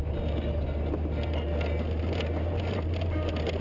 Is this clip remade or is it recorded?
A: recorded